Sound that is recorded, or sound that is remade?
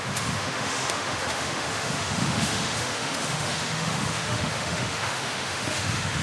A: remade